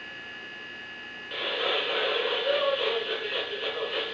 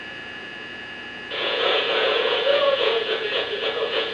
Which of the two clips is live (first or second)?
first